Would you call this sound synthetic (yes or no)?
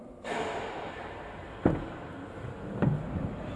no